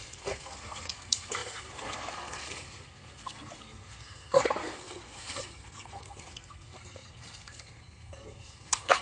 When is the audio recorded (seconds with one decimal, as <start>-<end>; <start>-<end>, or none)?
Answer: none